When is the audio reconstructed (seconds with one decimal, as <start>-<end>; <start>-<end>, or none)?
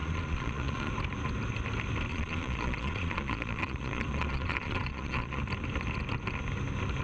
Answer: 0.0-0.9; 2.1-5.4